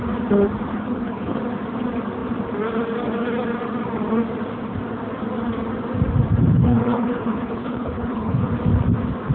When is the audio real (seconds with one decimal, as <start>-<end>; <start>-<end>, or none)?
0.0-0.7; 1.4-6.6; 8.5-9.3